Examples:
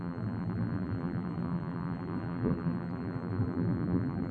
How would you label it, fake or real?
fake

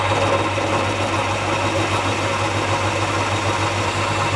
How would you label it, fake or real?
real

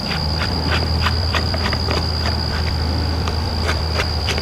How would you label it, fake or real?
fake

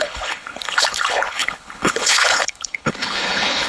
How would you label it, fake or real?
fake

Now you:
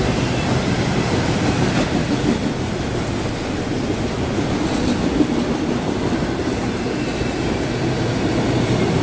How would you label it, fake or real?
real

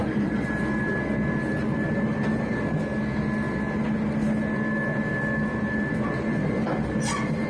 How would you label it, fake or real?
real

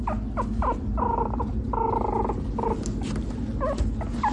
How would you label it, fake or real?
real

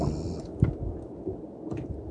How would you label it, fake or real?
real